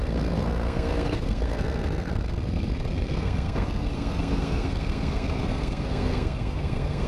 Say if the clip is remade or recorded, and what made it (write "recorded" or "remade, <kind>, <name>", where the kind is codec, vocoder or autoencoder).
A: remade, codec, SNAC